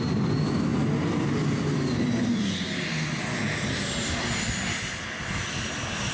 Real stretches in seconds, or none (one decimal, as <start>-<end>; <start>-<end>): 0.0-6.1

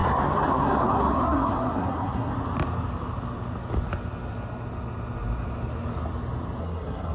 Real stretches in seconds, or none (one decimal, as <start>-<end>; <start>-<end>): 2.3-6.6